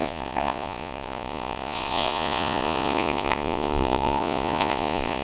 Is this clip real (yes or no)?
no